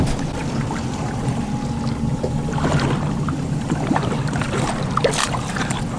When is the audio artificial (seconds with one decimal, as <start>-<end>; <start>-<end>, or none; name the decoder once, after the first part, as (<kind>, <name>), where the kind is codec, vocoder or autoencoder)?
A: 0.4-1.4 (vocoder, BigVGAN v2); 2.1-4.7; 5.2-6.0